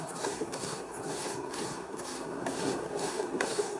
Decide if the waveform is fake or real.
fake